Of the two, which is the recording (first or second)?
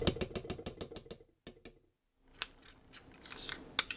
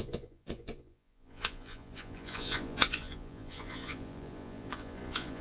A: first